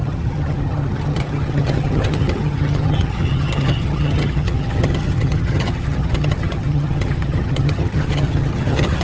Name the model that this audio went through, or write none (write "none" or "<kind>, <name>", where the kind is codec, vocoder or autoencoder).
vocoder, HiFi-GAN